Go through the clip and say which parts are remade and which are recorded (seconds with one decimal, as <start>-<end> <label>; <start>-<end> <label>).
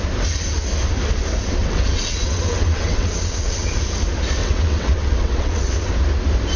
0.0-1.6 recorded; 1.6-3.8 remade; 3.8-4.4 recorded; 4.4-5.9 remade; 5.9-6.6 recorded